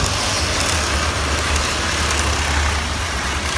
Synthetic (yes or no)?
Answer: no